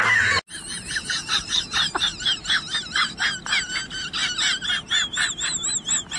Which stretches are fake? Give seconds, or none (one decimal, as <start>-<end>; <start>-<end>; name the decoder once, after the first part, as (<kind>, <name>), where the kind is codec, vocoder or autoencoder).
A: none